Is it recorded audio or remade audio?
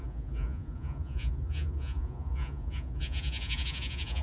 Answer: remade